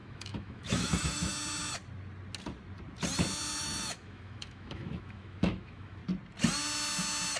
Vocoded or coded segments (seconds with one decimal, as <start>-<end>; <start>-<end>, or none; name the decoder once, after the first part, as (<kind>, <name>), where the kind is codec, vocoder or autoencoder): 0.0-1.3 (autoencoder, DAC-VAE); 3.6-6.0